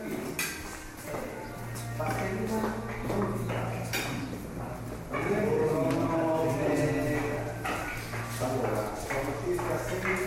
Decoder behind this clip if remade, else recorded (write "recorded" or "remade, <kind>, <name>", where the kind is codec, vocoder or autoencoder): recorded